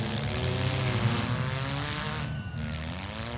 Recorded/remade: recorded